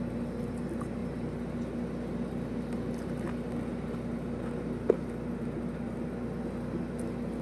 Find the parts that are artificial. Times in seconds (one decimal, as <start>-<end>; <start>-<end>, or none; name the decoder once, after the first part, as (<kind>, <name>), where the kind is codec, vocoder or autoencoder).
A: none